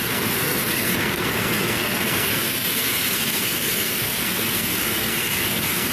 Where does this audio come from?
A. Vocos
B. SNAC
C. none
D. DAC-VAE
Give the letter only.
B